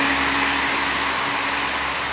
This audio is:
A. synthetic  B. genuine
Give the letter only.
B